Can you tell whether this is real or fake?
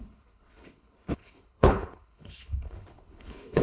fake